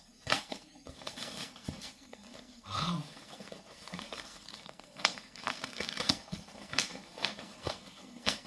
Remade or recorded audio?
remade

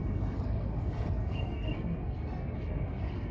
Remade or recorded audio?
remade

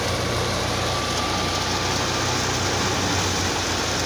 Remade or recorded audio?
recorded